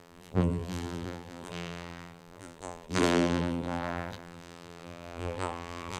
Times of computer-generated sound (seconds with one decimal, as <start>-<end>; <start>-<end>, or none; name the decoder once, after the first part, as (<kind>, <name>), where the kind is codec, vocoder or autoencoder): 0.0-6.0 (vocoder, BigVGAN v2)